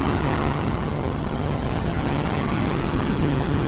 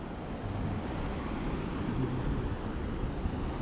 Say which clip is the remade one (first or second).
first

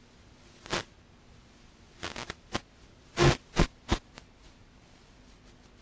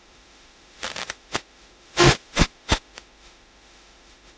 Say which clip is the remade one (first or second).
second